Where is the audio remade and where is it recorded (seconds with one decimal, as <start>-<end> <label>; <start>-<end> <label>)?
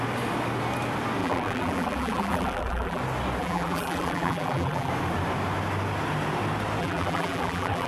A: 0.0-1.2 recorded; 1.2-3.0 remade; 3.0-3.4 recorded; 3.4-4.9 remade; 4.9-6.8 recorded; 6.8-7.9 remade